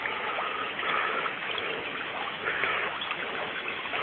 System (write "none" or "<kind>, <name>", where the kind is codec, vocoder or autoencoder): autoencoder, DAC-VAE